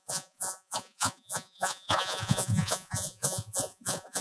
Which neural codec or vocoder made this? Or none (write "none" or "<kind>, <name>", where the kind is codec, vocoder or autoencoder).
vocoder, Vocos